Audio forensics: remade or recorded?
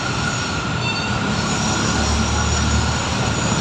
recorded